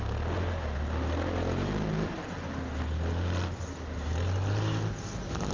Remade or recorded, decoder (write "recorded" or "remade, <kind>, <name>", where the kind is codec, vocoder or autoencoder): recorded